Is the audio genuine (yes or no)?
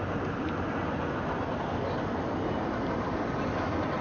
yes